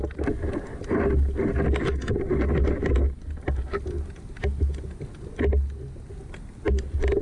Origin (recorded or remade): recorded